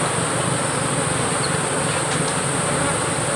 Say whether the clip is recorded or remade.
recorded